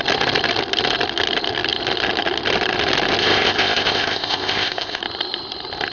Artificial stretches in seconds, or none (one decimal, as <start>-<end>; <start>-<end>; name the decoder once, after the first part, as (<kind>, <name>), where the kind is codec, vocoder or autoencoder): 3.2-5.0 (codec, ZipCodec)